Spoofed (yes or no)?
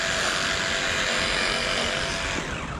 no